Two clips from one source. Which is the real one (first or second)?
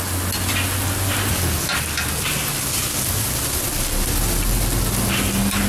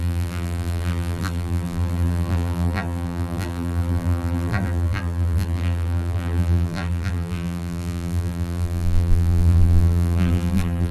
first